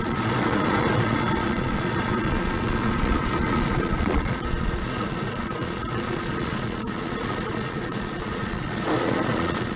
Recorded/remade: remade